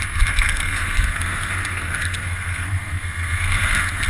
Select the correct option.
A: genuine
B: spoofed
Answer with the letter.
B